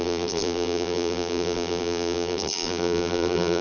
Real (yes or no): no